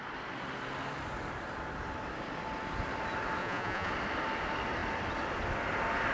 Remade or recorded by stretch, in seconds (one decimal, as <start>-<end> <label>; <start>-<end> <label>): 0.0-3.4 recorded; 3.4-3.9 remade; 3.9-6.1 recorded